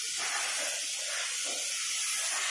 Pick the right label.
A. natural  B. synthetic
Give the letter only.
A